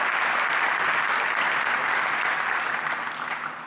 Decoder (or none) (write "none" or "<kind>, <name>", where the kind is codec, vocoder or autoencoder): none